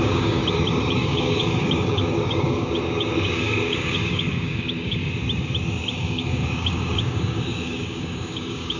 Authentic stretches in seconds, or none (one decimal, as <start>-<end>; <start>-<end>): 0.4-0.9; 5.0-5.9